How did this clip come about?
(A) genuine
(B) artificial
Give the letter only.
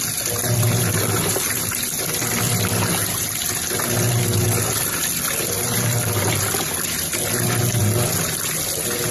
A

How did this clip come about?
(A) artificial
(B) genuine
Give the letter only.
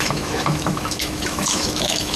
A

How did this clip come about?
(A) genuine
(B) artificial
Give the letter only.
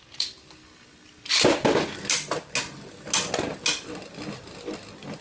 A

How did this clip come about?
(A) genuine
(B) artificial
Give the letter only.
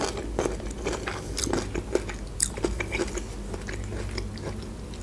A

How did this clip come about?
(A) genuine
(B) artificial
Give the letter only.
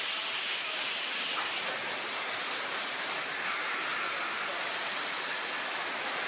A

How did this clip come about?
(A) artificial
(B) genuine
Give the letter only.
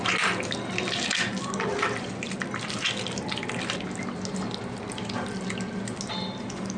B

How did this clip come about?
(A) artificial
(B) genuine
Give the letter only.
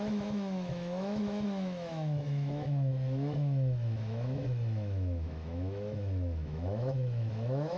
A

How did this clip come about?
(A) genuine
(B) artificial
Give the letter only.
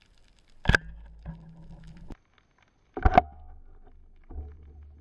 A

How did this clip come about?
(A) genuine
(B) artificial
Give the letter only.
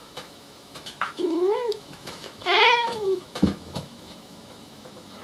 B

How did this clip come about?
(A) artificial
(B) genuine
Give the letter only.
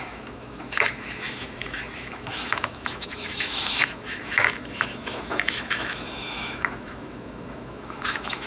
A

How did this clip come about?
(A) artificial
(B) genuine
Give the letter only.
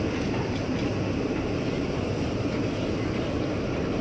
B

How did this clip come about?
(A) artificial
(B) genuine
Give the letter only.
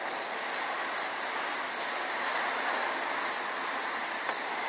B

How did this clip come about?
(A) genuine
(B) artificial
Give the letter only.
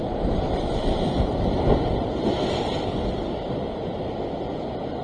A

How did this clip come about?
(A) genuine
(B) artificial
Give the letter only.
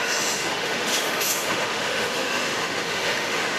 B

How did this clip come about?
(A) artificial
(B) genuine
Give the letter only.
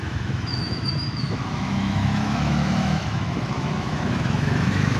A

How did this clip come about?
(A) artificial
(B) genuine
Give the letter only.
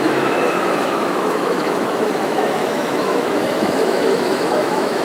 A